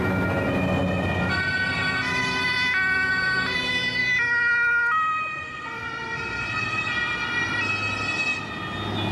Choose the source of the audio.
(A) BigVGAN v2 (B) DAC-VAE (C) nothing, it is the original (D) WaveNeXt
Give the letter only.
C